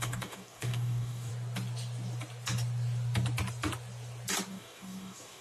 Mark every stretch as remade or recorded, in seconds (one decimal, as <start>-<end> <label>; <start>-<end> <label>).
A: 0.0-1.3 remade; 1.3-4.5 recorded; 4.5-5.4 remade